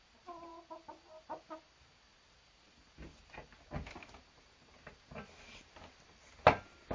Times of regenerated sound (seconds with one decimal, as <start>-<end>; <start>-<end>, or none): none